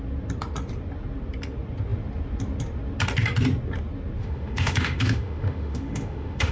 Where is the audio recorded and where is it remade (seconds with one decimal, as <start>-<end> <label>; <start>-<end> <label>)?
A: 0.0-4.2 recorded; 4.2-6.5 remade